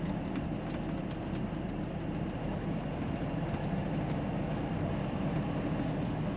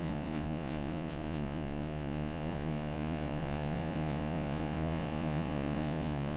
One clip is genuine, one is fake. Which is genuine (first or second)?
first